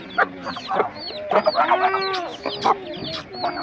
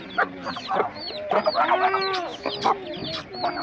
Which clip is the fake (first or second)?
second